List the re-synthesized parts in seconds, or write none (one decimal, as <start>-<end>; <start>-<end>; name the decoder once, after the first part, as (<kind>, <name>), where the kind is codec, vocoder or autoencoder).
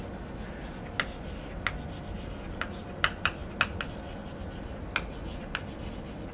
none